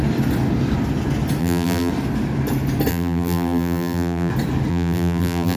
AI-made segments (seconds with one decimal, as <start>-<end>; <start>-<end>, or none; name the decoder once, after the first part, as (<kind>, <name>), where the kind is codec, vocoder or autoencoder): 1.4-1.9 (vocoder, BigVGAN v2); 2.9-4.3; 4.7-5.6

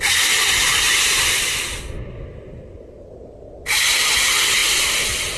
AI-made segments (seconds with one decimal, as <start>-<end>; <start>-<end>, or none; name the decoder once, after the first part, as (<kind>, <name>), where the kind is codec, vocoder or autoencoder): none

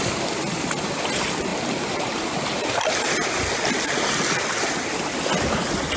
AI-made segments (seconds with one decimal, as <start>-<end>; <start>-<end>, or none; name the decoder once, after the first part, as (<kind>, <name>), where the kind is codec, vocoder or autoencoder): 1.5-2.1 (vocoder, BigVGAN v2)

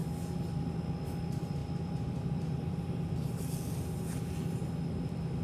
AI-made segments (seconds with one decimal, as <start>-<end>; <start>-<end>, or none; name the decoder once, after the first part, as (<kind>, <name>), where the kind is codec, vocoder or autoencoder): 1.6-2.8 (vocoder, BigVGAN v2)

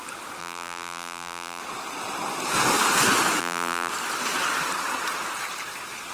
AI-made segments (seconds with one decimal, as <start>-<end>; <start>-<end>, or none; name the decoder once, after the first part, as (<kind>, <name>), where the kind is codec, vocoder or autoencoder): 0.4-1.6 (vocoder, BigVGAN v2); 3.4-3.9

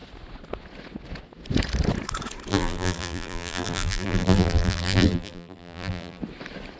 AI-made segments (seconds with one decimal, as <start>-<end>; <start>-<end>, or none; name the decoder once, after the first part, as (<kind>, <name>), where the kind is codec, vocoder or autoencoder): 2.5-6.2 (vocoder, BigVGAN v2)

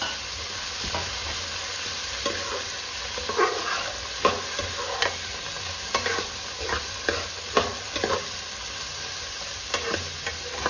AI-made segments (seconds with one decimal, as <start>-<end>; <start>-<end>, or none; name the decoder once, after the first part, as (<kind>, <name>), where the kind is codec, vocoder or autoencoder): none